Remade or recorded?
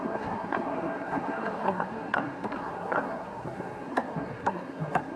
remade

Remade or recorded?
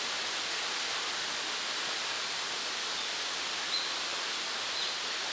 recorded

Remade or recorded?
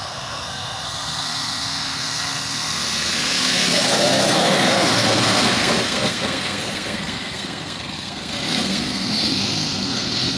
remade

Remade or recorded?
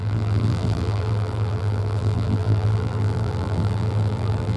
remade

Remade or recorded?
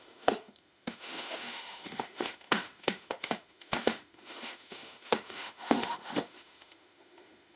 remade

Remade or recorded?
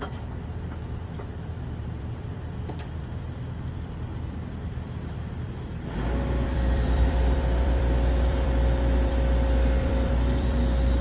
remade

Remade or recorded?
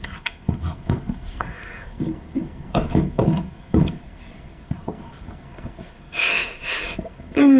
remade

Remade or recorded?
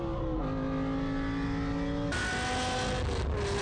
recorded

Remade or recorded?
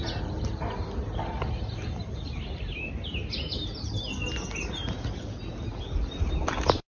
recorded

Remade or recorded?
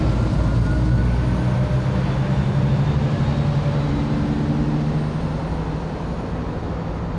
recorded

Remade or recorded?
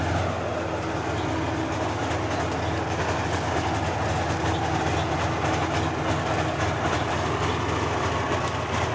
recorded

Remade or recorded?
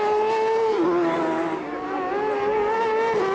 recorded